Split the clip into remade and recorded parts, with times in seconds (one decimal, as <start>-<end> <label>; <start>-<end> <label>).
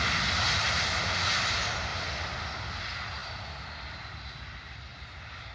0.0-5.5 recorded